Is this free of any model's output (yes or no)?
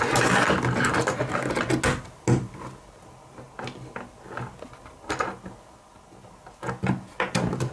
yes